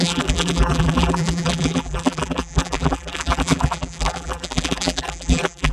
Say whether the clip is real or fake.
fake